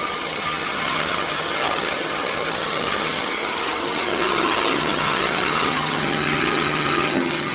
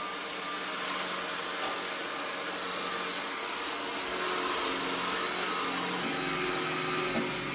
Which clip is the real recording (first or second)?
second